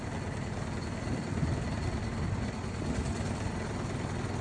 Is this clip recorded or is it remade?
recorded